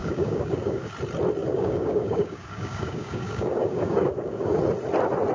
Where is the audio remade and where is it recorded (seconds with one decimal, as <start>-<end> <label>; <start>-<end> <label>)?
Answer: 0.0-0.9 remade; 0.9-1.4 recorded; 1.4-4.6 remade; 4.6-5.3 recorded